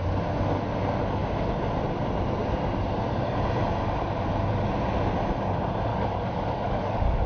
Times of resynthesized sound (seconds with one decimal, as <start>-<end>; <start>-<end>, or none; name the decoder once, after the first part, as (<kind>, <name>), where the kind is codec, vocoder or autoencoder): 5.9-7.3 (codec, DAC)